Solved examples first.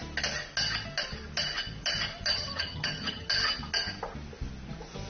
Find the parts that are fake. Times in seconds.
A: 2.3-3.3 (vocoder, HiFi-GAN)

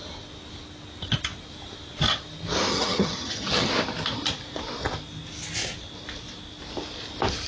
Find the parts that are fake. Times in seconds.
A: 2.7-3.7 (vocoder, HiFi-GAN)

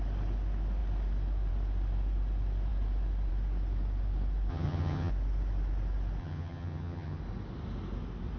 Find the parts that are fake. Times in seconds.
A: 4.5-5.1 (vocoder, HiFi-GAN); 6.2-7.2

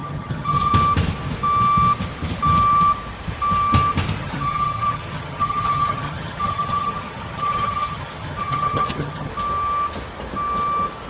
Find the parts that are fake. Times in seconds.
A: 0.0-0.7 (vocoder, HiFi-GAN); 4.2-9.3

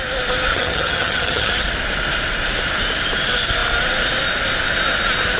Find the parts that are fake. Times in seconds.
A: 0.5-1.5 (vocoder, HiFi-GAN)